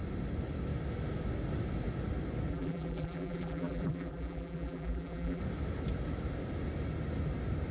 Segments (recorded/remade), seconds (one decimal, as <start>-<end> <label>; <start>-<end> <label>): 0.0-2.5 recorded; 2.5-5.4 remade; 5.4-7.7 recorded